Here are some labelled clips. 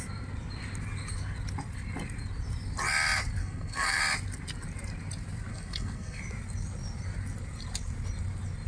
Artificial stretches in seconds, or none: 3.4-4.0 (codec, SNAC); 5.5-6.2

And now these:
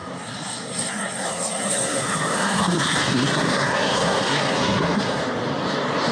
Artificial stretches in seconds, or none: 0.0-5.2 (codec, SNAC)

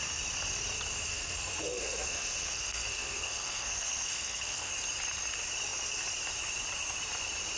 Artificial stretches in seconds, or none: 1.1-4.7 (codec, SNAC)

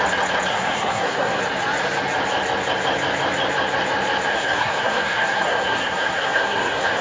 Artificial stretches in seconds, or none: 0.5-1.4 (codec, SNAC); 4.3-7.0

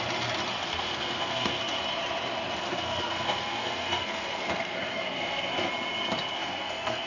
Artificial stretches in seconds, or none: 0.6-1.6 (codec, SNAC); 2.6-5.7; 6.4-7.1

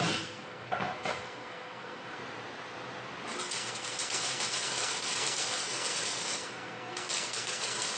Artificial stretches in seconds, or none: 0.0-2.2 (codec, SNAC); 3.4-8.0

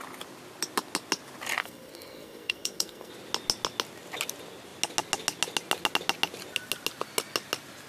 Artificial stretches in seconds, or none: 1.6-3.1 (codec, SNAC)